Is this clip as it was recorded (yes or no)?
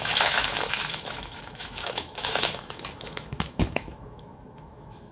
no